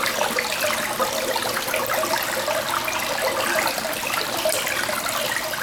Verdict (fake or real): real